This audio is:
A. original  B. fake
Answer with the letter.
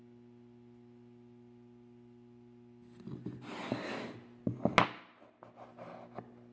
A